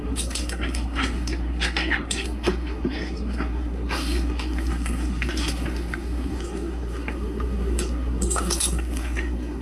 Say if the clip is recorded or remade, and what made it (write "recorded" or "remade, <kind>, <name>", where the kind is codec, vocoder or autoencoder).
remade, codec, SNAC